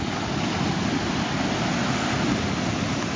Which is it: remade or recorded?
recorded